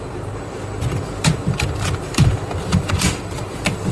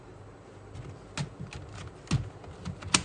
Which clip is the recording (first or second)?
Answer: second